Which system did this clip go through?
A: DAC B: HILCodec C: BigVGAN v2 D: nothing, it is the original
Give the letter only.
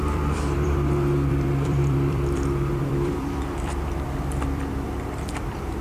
C